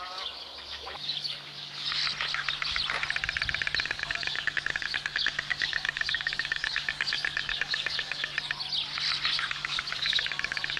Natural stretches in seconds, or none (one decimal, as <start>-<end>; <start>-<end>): 2.0-3.8; 8.3-9.5